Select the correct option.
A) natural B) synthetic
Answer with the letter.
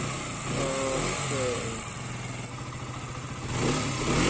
A